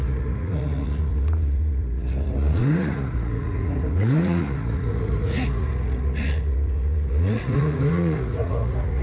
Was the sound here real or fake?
fake